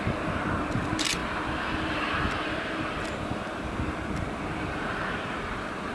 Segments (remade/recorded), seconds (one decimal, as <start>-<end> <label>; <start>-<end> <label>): 0.0-5.9 recorded